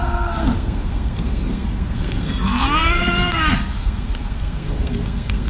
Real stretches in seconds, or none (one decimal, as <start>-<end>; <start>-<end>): none